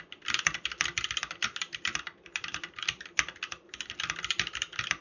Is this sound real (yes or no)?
yes